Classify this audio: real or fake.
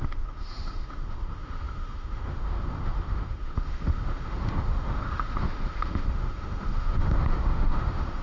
fake